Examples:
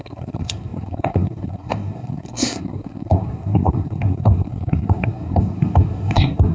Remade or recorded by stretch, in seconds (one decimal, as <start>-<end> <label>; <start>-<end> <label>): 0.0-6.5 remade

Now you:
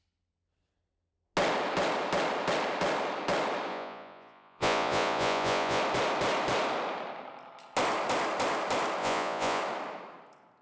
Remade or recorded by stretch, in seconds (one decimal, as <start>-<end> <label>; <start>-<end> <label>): 0.0-3.7 recorded; 3.7-5.8 remade; 5.8-9.0 recorded; 9.0-9.6 remade; 9.6-10.6 recorded

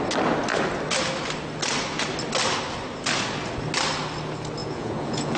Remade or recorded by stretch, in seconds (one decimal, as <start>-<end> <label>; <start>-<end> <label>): 0.0-4.6 recorded; 4.6-5.4 remade

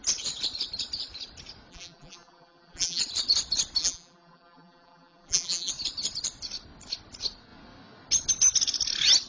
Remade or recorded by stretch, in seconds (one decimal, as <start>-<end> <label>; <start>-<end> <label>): 0.0-1.7 recorded; 1.7-3.0 remade; 3.0-3.8 recorded; 3.8-5.7 remade; 5.7-9.3 recorded

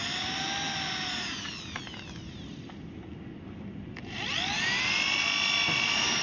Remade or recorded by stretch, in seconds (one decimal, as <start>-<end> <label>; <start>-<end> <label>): 0.0-6.2 recorded

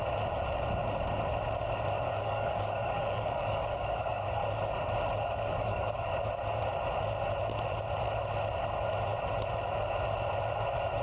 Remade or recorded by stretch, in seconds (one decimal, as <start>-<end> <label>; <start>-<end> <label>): 0.0-2.0 recorded; 2.0-4.4 remade; 4.4-5.2 recorded; 5.2-6.1 remade; 6.1-11.0 recorded

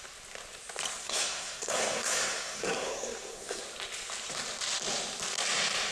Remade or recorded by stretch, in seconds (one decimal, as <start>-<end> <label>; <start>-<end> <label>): 0.0-1.0 recorded; 1.0-3.6 remade; 3.6-5.9 recorded